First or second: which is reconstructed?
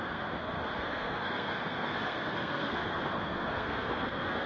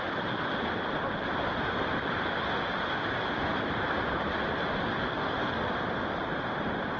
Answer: first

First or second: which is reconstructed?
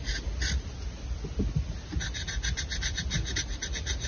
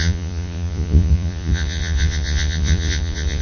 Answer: second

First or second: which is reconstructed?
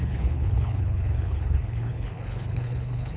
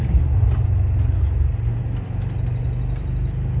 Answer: first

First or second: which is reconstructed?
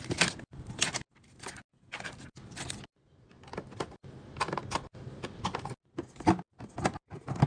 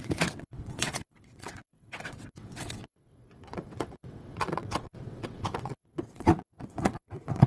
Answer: second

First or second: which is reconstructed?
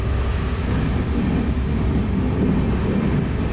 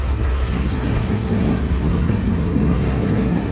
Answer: second